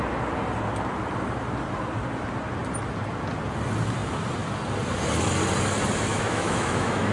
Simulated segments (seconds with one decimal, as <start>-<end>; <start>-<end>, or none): 6.1-7.1